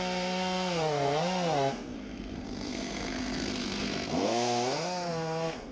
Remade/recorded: remade